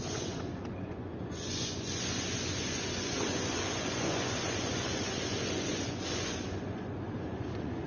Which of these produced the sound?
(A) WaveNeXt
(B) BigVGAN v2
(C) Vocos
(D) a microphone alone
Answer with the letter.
C